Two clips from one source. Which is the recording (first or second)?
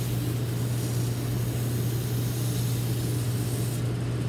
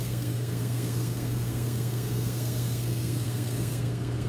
first